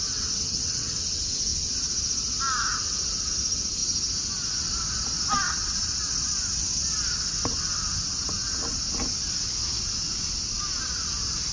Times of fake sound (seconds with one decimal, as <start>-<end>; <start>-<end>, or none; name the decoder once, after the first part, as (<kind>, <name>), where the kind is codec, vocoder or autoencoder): 0.4-1.0 (vocoder, HiFi-GAN)